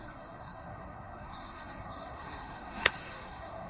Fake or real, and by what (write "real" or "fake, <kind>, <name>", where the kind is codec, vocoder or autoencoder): fake, codec, SNAC